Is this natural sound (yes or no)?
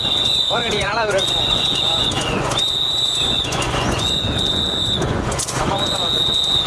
no